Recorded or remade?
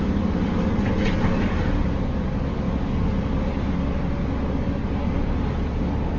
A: recorded